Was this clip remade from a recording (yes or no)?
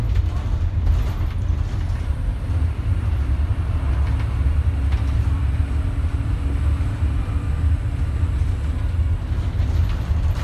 no